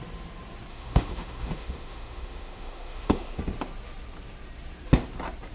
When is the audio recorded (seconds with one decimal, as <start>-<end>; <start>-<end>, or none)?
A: 0.0-0.7; 3.4-5.5